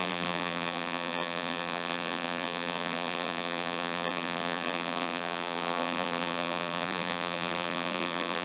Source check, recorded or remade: remade